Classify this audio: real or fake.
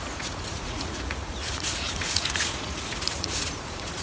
fake